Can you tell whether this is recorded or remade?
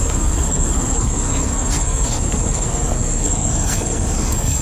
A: remade